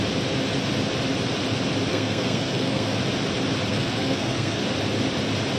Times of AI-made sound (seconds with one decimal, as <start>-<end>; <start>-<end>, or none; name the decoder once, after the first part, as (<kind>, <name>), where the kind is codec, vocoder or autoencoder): 1.9-3.0 (codec, SNAC); 3.7-4.6